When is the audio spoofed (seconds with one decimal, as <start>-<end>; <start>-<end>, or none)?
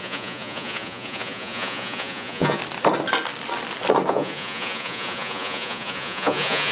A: 0.0-2.6; 4.1-6.7